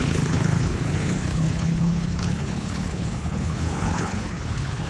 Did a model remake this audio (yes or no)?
yes